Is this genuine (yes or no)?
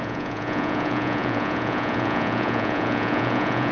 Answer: no